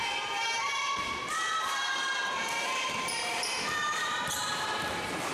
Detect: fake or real fake